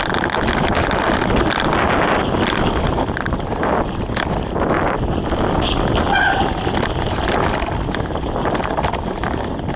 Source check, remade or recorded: recorded